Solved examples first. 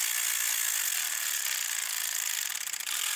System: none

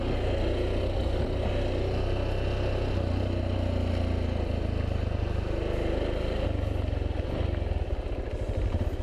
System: none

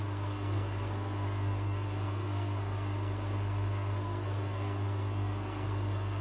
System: codec, SNAC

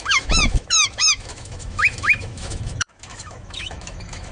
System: autoencoder, DAC-VAE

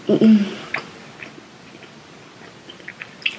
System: none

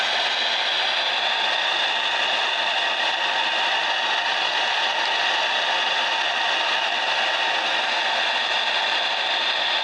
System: none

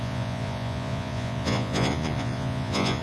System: vocoder, Vocos